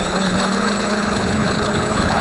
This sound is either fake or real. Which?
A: fake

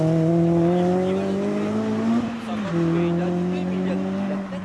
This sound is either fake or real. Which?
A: real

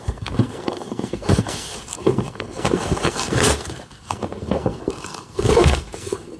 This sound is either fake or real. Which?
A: fake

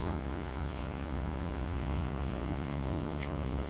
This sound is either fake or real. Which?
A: fake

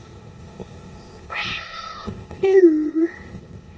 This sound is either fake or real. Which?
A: fake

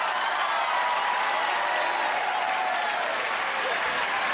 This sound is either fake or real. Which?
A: real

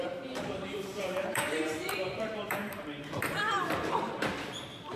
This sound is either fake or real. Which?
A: fake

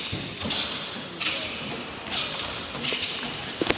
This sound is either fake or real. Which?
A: real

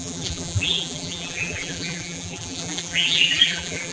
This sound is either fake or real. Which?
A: fake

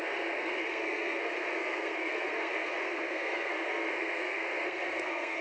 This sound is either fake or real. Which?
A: fake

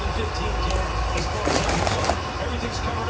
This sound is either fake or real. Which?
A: real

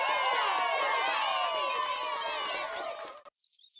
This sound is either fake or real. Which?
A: real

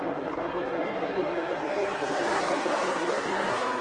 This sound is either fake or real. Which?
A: fake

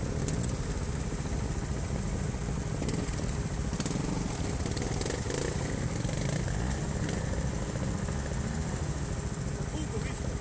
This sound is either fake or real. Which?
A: real